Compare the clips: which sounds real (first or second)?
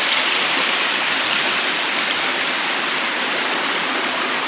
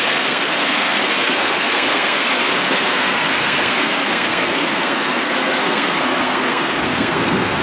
first